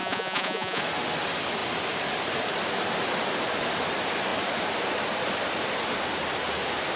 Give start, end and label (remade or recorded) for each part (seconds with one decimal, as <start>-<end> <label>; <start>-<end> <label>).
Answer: 0.0-0.8 remade; 0.8-7.0 recorded